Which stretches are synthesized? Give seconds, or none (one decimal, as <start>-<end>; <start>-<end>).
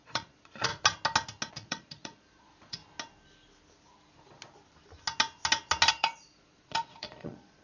0.0-0.7; 1.5-2.8; 5.9-7.6